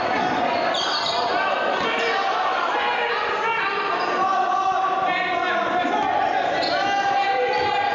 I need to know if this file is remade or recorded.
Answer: recorded